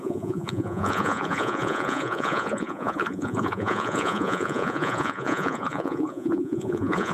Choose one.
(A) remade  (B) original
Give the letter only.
A